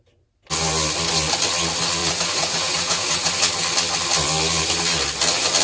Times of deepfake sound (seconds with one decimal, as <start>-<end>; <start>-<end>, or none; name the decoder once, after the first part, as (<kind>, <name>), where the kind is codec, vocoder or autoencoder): 2.0-3.4 (vocoder, Vocos)